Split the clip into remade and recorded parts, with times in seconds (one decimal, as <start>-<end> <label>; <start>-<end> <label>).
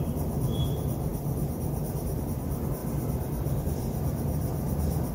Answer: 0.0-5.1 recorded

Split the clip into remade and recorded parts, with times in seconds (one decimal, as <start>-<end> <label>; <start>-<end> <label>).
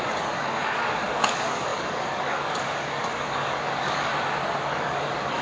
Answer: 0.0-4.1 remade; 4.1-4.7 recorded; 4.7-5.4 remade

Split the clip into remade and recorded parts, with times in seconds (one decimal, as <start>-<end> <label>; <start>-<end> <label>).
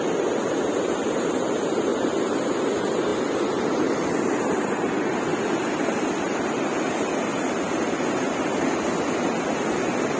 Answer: 0.0-10.2 recorded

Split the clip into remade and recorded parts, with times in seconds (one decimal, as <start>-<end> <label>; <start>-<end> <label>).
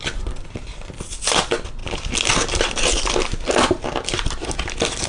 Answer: 0.0-5.1 recorded